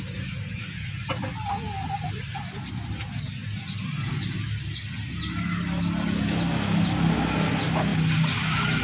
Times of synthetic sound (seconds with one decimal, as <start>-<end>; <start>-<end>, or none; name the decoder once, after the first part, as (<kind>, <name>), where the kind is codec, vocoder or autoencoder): none